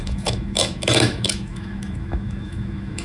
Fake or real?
fake